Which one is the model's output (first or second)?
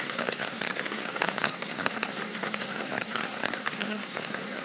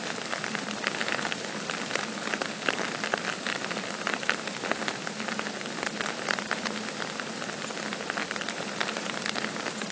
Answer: first